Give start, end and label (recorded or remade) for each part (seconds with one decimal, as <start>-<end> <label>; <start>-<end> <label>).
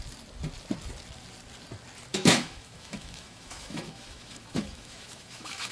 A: 0.0-2.1 recorded; 2.1-5.7 remade